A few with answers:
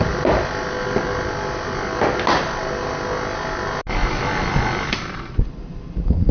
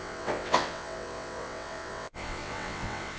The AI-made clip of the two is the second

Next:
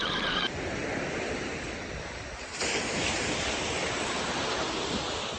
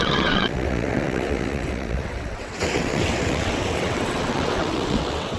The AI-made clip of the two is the second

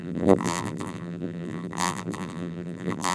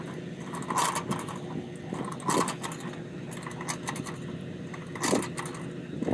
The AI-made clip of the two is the first